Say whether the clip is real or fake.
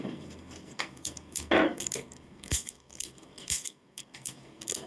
fake